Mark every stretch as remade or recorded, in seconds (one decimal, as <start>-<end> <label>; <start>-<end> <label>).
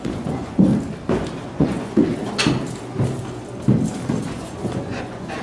0.0-0.7 remade; 0.7-1.4 recorded; 1.4-2.0 remade; 2.0-4.3 recorded; 4.3-5.4 remade